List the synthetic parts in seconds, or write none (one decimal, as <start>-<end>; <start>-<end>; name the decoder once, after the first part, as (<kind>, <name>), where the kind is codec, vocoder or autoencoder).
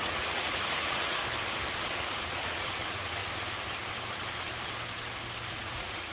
0.0-1.2 (vocoder, Vocos); 2.1-3.2; 5.5-6.1